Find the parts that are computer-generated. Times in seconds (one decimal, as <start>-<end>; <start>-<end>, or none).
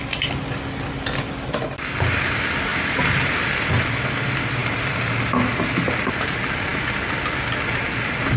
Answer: none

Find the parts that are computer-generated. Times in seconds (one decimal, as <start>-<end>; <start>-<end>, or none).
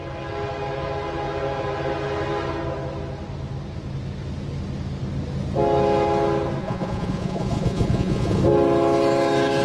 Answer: 6.6-8.4